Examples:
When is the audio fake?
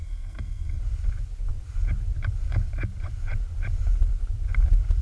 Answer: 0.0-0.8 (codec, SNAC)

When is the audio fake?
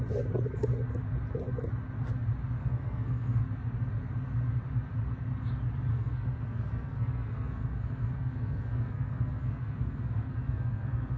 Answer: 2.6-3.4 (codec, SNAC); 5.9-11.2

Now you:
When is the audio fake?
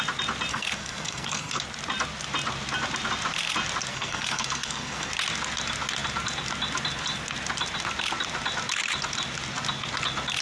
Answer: 0.5-1.6 (codec, SNAC); 3.9-5.1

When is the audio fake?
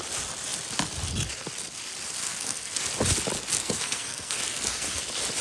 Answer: 2.2-2.8 (codec, SNAC); 3.6-5.0